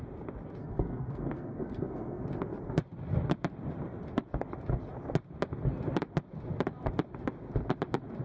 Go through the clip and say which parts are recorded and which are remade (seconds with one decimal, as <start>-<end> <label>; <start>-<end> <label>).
0.0-0.6 recorded; 0.6-2.2 remade; 2.2-8.2 recorded